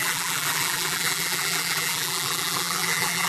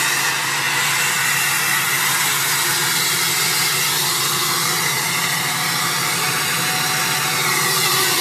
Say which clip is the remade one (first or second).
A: first